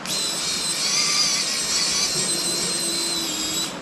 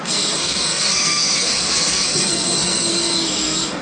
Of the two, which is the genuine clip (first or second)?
first